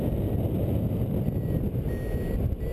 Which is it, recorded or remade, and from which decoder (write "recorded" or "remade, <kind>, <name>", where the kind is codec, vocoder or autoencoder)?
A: recorded